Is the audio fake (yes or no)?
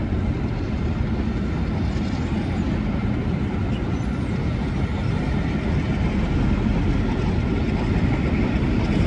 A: no